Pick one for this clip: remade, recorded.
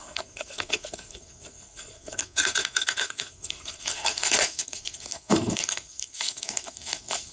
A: remade